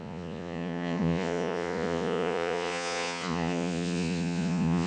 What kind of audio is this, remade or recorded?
remade